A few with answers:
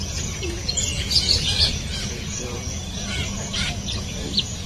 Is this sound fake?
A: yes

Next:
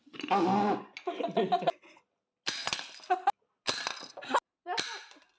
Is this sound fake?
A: no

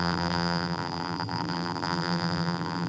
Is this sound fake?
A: yes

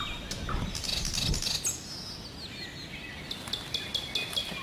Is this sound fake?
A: no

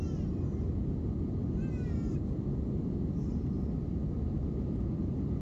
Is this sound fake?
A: no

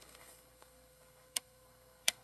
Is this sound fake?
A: yes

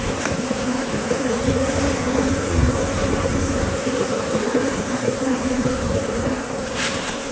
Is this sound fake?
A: yes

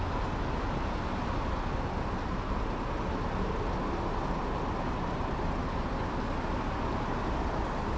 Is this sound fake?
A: no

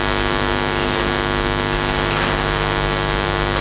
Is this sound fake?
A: no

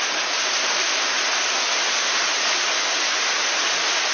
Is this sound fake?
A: no